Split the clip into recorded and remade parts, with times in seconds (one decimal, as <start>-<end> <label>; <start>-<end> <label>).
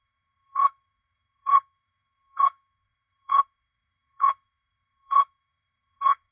0.0-6.3 remade